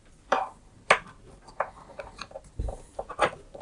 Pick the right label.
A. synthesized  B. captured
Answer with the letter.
B